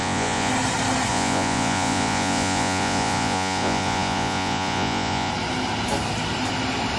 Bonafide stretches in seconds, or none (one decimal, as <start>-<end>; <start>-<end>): 0.5-1.1; 5.3-7.0